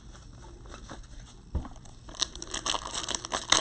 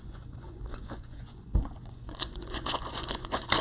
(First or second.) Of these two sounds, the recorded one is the first